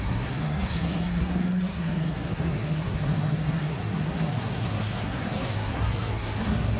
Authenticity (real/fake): fake